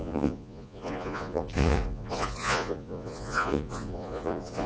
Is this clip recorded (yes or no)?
no